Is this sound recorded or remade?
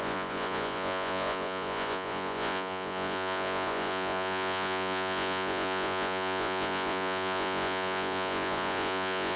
remade